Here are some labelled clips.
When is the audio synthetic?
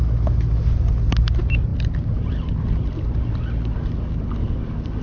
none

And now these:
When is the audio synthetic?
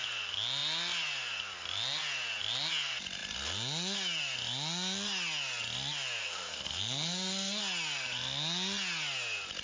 6.2-7.6 (codec, SNAC)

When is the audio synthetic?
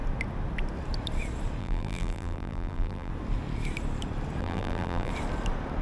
1.6-3.1 (vocoder, BigVGAN v2); 4.4-5.1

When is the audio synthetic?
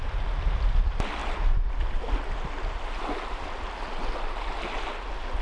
none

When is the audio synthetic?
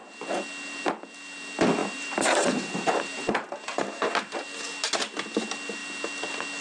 1.8-4.1 (vocoder, BigVGAN v2)